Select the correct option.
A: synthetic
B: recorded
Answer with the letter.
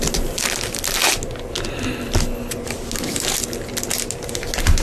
B